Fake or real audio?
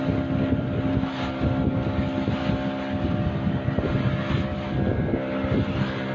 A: real